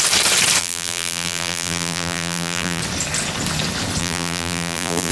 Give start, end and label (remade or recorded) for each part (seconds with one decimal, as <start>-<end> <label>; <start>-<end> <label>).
0.0-0.6 recorded; 0.6-2.8 remade; 2.8-4.0 recorded; 4.0-5.1 remade